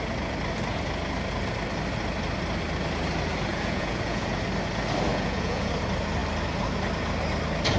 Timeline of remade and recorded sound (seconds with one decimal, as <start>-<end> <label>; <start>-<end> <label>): 0.0-3.5 recorded; 3.5-4.4 remade; 4.4-5.1 recorded; 5.1-5.7 remade; 5.7-7.8 recorded